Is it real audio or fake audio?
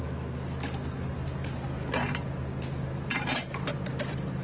real